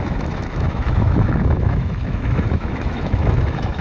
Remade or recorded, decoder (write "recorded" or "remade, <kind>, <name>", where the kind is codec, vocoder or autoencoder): remade, autoencoder, DAC-VAE